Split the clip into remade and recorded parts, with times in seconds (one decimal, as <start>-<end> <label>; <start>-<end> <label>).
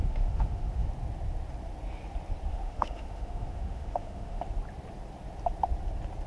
0.0-0.9 remade; 0.9-2.5 recorded; 2.5-4.4 remade; 4.4-6.3 recorded